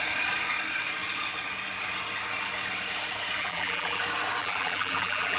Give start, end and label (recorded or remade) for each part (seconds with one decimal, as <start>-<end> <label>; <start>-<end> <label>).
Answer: 0.0-3.4 recorded; 3.4-4.0 remade; 4.0-4.4 recorded; 4.4-5.4 remade